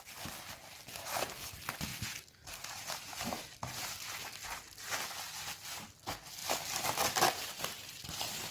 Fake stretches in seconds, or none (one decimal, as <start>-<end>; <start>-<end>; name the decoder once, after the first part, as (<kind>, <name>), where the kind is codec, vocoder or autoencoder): none